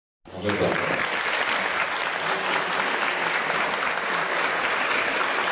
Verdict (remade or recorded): recorded